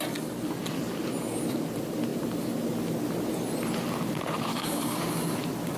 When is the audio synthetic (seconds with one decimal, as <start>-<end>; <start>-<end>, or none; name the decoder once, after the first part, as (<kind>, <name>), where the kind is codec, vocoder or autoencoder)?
4.5-5.0 (codec, DAC)